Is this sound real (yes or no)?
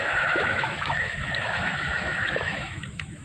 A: no